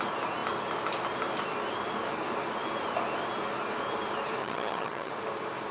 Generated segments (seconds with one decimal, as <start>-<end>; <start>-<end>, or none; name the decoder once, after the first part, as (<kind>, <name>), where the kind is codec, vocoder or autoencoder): 4.4-5.1 (vocoder, HiFi-GAN)